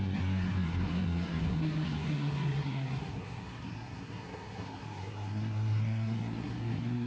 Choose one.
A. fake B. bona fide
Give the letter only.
A